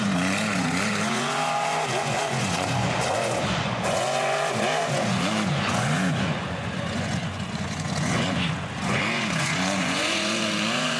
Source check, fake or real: fake